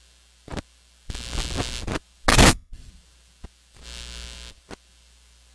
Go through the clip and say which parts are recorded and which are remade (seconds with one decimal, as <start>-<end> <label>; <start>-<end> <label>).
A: 0.0-2.3 recorded; 2.3-2.9 remade; 2.9-5.5 recorded